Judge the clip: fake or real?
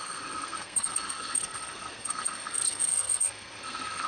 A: fake